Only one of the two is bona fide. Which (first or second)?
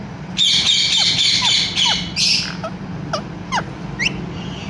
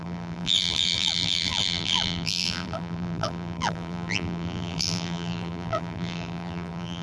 first